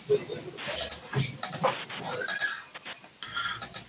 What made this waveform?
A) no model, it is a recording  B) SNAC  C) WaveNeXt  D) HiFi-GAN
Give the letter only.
A